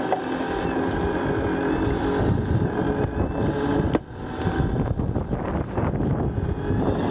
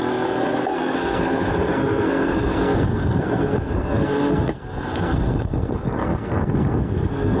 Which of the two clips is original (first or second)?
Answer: first